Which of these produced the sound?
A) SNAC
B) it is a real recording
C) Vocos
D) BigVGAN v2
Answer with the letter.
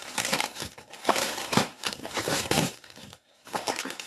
A